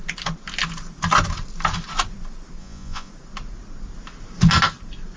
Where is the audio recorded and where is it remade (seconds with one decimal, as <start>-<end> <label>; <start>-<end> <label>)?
0.0-2.6 recorded; 2.6-3.1 remade; 3.1-5.2 recorded